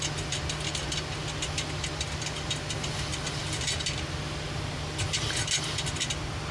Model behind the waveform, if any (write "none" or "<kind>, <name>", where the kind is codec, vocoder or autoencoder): none